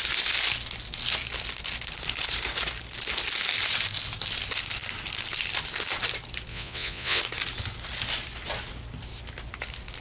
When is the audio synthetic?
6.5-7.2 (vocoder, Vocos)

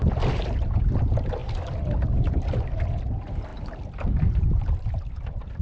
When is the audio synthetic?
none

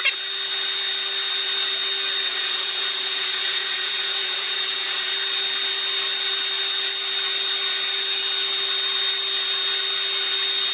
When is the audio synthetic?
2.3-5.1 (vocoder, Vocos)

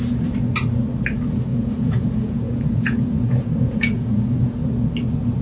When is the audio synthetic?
1.5-4.7 (vocoder, Vocos)

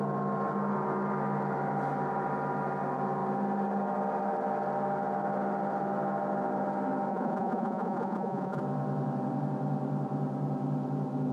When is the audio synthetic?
7.1-8.6 (vocoder, Vocos)